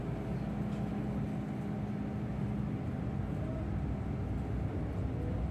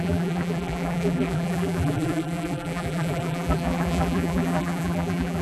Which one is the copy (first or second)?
second